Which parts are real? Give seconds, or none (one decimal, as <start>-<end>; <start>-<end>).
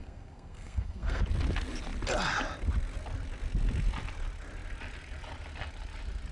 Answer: 1.2-6.3